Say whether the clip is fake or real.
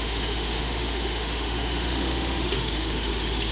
fake